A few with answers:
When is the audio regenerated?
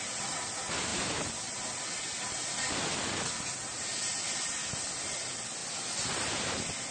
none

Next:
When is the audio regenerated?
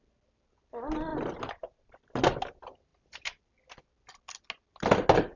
1.1-1.9 (vocoder, BigVGAN v2)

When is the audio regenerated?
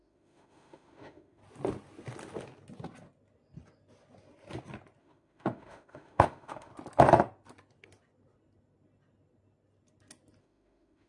0.0-1.4 (autoencoder, DAC-VAE); 5.0-6.7; 10.4-11.1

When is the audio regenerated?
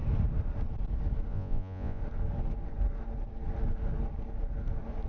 1.3-2.0 (vocoder, Vocos)